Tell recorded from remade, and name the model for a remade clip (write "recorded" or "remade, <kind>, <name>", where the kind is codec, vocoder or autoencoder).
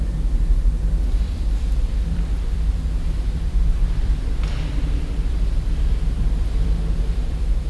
remade, vocoder, BigVGAN v2